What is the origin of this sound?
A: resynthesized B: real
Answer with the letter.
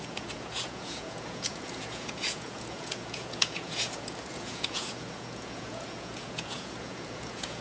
A